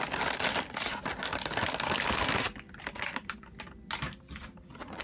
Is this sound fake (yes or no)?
no